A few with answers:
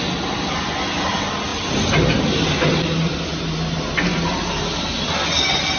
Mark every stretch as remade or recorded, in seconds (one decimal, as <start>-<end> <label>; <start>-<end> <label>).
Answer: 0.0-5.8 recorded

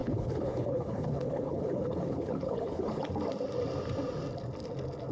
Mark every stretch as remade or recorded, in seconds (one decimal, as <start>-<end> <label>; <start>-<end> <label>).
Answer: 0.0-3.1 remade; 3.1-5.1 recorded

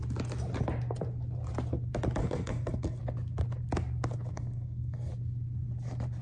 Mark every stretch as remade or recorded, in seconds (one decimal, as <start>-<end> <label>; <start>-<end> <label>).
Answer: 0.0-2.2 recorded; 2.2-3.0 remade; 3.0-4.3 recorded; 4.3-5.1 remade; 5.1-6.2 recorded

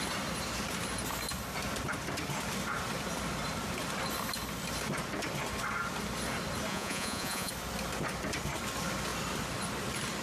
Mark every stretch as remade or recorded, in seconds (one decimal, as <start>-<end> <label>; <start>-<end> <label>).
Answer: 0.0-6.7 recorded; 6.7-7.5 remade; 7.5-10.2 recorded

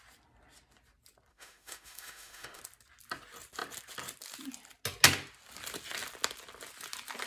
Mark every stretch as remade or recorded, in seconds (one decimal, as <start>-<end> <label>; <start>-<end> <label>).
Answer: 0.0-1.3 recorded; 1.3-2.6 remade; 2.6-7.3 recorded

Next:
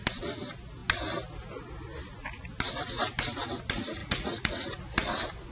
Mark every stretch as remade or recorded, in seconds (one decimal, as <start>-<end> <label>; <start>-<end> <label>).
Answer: 0.0-4.0 recorded; 4.0-4.8 remade; 4.8-5.5 recorded

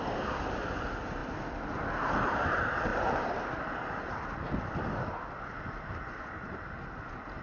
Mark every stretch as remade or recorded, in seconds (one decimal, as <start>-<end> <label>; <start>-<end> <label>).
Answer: 0.0-7.4 recorded

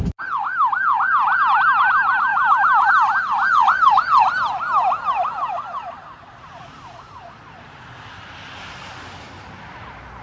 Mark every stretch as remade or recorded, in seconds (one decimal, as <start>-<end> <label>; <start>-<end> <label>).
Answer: 0.0-10.2 recorded